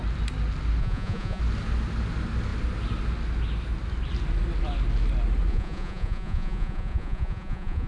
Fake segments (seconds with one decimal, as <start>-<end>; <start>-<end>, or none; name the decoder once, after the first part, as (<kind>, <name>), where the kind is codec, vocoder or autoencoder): 0.8-1.4 (vocoder, Vocos); 5.5-7.9